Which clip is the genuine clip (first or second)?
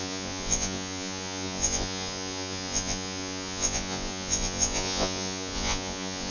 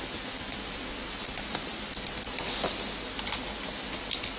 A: second